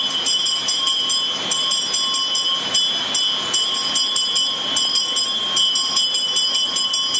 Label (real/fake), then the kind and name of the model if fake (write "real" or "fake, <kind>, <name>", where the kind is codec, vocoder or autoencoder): real